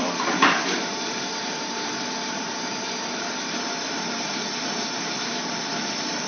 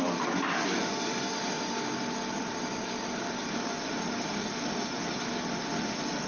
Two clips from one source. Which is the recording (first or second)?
second